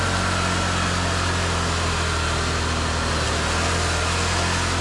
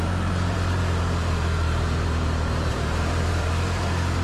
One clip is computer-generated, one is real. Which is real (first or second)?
first